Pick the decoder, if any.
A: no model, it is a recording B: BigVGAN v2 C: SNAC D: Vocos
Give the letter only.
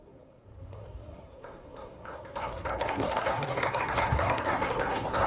C